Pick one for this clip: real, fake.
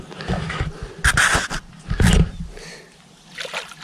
real